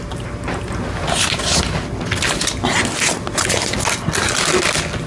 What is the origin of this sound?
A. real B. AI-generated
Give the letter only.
A